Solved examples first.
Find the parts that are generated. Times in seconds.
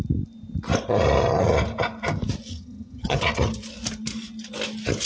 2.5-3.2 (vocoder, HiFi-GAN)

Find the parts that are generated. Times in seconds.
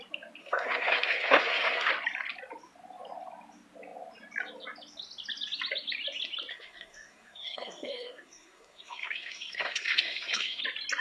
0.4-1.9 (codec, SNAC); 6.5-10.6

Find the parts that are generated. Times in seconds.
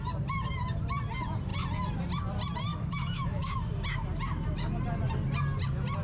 2.7-3.6 (autoencoder, DAC-VAE)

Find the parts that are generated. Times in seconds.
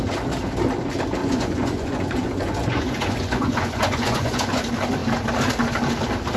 1.2-4.6 (vocoder, Vocos)